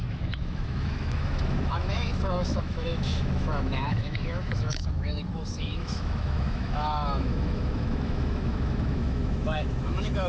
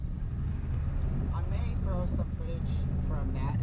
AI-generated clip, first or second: first